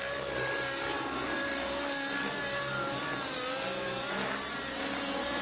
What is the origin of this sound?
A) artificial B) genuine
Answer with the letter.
B